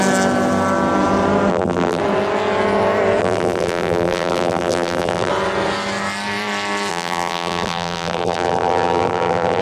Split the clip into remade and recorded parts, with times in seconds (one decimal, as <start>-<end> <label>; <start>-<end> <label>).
0.0-1.5 recorded; 1.5-2.0 remade; 2.0-3.2 recorded; 3.2-5.3 remade; 5.3-6.9 recorded; 6.9-9.6 remade